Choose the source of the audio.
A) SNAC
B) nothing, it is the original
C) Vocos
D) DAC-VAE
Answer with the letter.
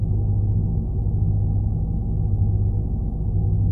B